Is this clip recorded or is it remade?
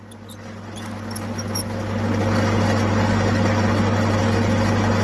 recorded